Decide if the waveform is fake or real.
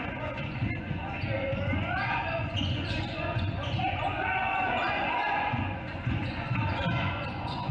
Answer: fake